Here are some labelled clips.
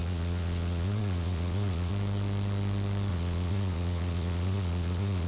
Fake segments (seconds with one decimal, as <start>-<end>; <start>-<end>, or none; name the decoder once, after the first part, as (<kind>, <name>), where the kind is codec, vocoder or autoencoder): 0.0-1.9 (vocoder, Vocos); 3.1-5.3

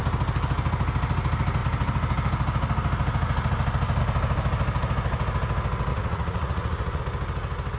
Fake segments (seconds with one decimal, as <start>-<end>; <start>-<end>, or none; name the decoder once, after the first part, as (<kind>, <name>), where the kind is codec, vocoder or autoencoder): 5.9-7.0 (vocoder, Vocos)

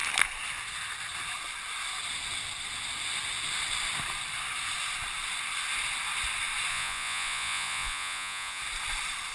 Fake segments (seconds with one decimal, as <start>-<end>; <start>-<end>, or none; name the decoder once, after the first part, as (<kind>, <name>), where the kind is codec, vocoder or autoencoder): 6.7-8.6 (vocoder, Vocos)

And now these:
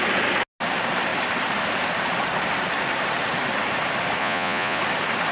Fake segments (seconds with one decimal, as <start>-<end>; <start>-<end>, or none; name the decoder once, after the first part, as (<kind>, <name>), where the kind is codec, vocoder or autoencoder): 4.2-4.8 (vocoder, Vocos)

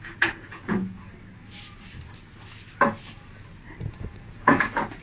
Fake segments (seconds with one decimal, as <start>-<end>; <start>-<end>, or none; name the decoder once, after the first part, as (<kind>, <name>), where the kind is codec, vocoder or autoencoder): 0.0-1.1 (vocoder, Vocos); 3.9-5.0

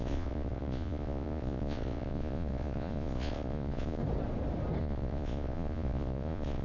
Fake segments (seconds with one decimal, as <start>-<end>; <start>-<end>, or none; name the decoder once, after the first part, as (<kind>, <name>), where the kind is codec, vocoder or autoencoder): 0.0-4.0 (vocoder, Vocos); 4.8-6.6

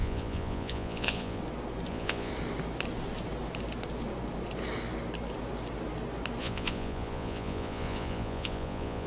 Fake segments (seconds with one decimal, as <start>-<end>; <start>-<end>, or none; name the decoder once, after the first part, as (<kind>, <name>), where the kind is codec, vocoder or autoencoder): 0.0-1.4 (vocoder, Vocos); 1.9-2.3; 6.4-9.1

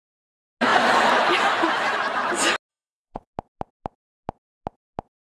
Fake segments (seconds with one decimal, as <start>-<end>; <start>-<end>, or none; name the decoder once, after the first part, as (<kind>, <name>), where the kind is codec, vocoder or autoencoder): 2.7-3.3 (vocoder, Vocos)